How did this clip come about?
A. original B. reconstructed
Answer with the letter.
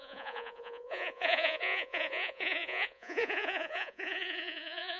B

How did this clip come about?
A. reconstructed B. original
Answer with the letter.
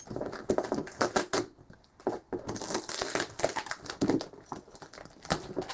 B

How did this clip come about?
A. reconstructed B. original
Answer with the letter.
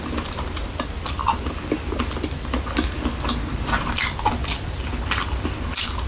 B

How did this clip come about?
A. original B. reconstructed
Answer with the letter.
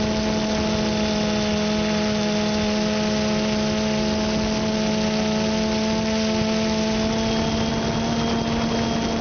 A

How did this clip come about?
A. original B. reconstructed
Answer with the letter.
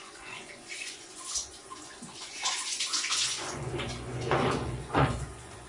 B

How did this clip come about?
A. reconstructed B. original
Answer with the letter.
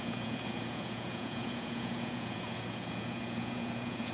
A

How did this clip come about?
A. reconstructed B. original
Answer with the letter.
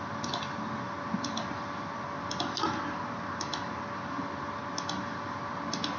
B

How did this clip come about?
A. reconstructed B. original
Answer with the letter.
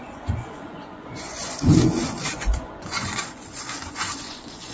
A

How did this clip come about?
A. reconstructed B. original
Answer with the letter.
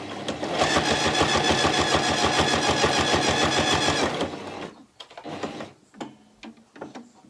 B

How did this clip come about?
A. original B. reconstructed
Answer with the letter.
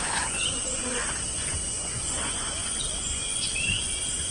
B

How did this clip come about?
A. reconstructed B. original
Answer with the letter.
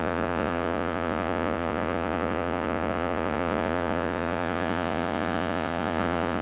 A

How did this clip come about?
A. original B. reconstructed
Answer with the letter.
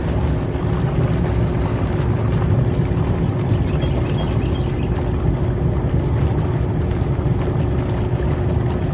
A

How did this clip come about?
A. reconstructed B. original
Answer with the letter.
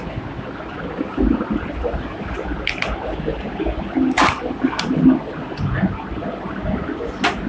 B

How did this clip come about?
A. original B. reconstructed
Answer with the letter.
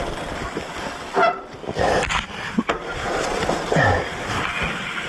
A